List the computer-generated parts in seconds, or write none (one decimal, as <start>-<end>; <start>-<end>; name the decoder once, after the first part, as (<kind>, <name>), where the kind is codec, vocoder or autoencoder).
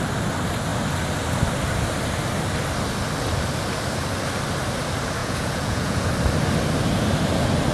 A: 5.2-6.1 (vocoder, Vocos)